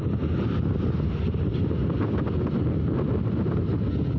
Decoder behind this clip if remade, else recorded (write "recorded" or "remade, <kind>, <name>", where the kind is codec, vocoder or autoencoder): recorded